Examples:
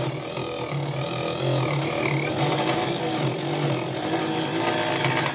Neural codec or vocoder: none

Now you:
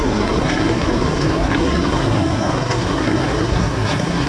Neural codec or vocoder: codec, SNAC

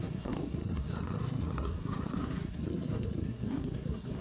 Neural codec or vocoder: codec, SNAC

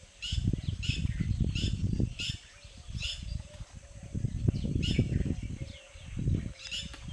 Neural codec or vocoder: none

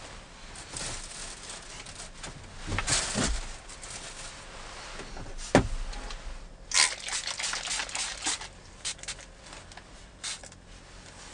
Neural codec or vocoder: none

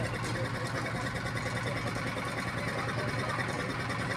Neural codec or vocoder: none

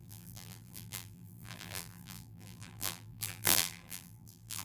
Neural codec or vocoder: vocoder, BigVGAN v2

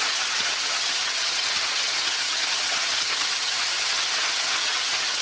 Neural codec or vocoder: vocoder, HiFi-GAN